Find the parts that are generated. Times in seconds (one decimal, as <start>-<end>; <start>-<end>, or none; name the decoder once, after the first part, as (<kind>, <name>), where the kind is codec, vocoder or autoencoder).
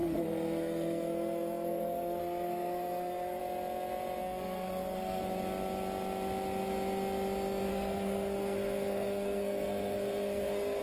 0.0-3.4 (codec, SNAC); 4.2-5.2; 7.7-10.8